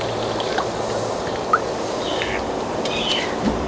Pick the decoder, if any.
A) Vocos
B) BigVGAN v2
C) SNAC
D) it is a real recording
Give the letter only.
D